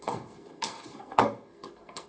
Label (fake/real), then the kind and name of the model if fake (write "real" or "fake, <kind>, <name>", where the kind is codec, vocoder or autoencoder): fake, codec, SNAC